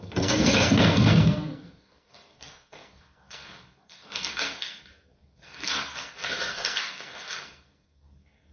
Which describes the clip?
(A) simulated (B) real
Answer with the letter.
A